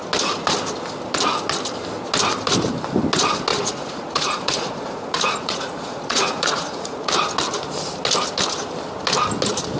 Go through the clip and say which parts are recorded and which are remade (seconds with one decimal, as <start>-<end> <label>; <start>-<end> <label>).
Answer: 0.0-3.5 recorded; 3.5-7.1 remade; 7.1-9.8 recorded